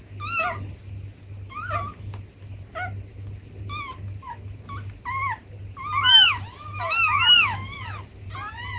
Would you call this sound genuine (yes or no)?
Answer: yes